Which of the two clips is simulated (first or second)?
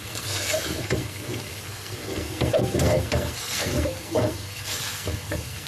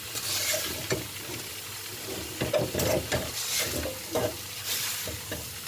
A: first